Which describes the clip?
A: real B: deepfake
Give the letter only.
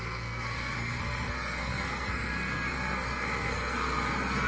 B